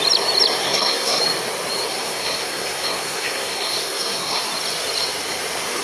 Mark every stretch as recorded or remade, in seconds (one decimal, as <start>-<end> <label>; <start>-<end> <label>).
0.0-0.6 recorded; 0.6-1.2 remade; 1.2-1.9 recorded; 1.9-4.4 remade; 4.4-5.8 recorded